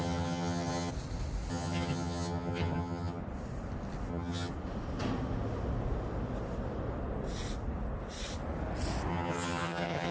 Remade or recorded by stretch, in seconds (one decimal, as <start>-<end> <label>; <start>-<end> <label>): 0.0-0.9 remade; 0.9-1.5 recorded; 1.5-3.2 remade; 3.2-4.1 recorded; 4.1-4.5 remade; 4.5-9.1 recorded; 9.1-10.1 remade